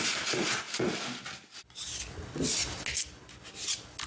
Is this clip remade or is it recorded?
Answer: recorded